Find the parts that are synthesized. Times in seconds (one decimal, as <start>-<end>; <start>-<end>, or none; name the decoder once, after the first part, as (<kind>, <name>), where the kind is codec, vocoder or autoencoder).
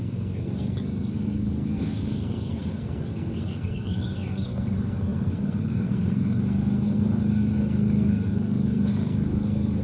0.0-9.8 (codec, SNAC)